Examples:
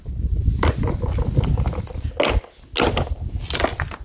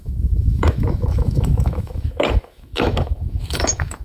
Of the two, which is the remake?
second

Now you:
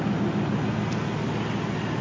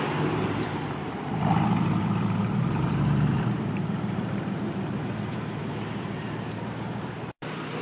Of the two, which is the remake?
second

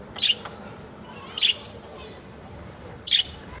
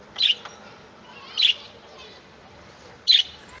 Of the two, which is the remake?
first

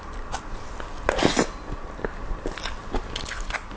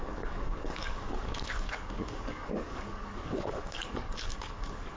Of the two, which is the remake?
second